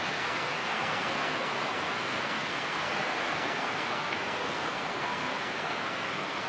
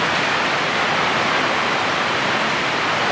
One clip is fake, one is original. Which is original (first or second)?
second